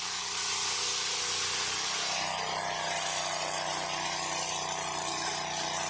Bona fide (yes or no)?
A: yes